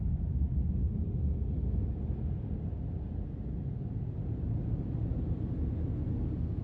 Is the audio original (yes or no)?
yes